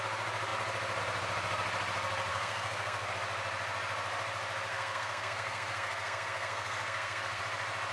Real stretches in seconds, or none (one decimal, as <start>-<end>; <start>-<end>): 0.0-2.3; 3.1-4.7; 7.4-7.9